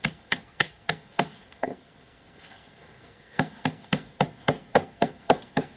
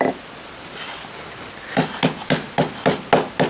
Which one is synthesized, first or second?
first